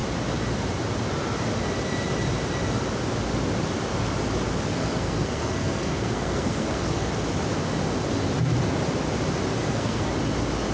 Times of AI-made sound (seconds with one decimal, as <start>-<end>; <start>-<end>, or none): 4.7-7.1; 9.6-10.1